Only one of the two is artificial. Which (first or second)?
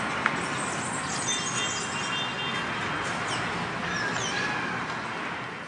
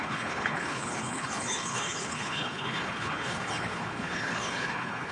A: second